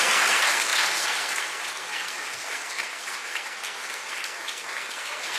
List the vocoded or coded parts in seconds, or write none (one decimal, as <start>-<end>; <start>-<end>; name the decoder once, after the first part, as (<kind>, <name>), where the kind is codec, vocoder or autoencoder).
0.0-5.4 (codec, SNAC)